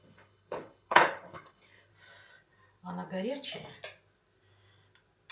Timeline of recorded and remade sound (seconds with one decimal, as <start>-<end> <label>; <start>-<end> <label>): 0.0-1.9 remade; 1.9-5.3 recorded